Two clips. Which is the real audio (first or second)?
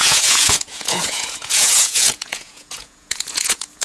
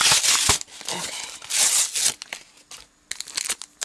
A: second